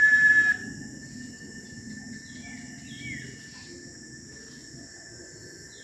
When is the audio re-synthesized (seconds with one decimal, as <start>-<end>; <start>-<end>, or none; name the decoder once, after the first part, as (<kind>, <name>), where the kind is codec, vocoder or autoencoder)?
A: 4.6-5.8 (vocoder, Vocos)

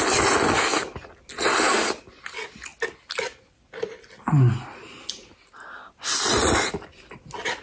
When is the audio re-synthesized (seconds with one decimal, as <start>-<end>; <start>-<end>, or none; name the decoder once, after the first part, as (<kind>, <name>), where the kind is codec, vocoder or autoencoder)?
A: none

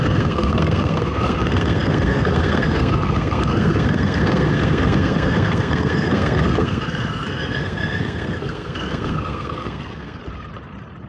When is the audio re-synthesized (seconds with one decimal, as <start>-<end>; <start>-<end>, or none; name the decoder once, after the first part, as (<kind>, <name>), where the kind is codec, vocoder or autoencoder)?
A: 0.0-10.2 (codec, SNAC)

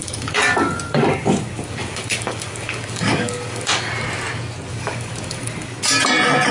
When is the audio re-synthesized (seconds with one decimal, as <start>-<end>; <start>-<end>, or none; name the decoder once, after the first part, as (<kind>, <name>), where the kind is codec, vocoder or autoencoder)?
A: 0.0-3.9 (codec, DAC); 4.7-5.8

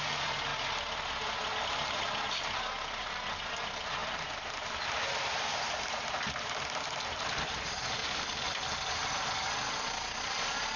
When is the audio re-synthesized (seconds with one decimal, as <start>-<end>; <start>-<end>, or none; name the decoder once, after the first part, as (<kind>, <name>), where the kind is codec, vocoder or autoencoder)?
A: 0.0-0.5 (vocoder, BigVGAN v2); 1.1-4.0; 5.7-8.0; 8.5-10.8

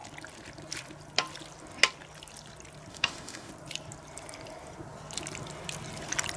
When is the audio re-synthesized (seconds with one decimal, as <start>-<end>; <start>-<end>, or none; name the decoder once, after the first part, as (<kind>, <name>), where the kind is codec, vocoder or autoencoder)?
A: 2.9-3.5 (autoencoder, DAC-VAE)